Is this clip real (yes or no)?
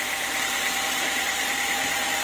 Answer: yes